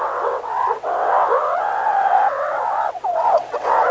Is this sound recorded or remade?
remade